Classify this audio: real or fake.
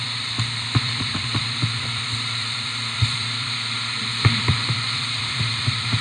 fake